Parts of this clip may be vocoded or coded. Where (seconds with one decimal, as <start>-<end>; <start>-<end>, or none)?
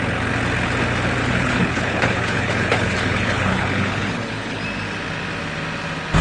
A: 1.2-4.6